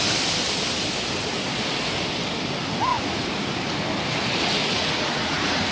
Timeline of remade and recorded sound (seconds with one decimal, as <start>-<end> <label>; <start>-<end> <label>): 0.0-2.9 recorded; 2.9-3.5 remade; 3.5-4.6 recorded; 4.6-5.7 remade